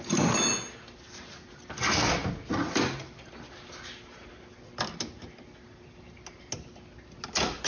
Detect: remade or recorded recorded